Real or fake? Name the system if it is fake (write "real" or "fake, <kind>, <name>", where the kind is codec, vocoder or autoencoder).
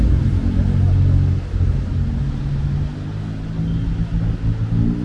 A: real